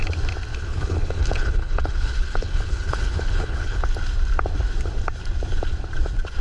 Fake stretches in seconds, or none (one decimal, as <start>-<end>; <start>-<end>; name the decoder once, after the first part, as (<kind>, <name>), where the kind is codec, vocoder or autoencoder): 0.5-3.8 (codec, HILCodec)